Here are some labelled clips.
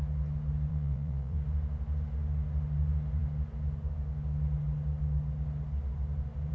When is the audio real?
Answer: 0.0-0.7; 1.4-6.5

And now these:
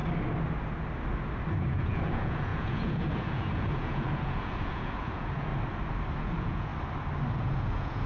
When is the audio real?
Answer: 0.0-1.5; 5.5-6.2; 6.7-7.3

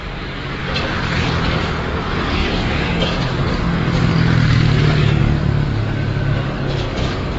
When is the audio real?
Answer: 0.6-1.9; 4.1-4.7

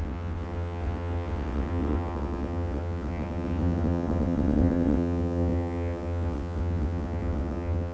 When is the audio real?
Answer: none